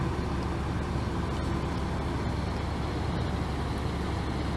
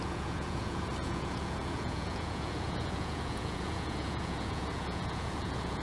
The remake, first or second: second